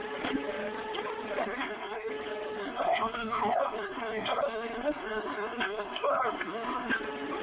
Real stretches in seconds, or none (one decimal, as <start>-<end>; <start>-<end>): 0.0-1.4; 2.1-2.6; 6.9-7.4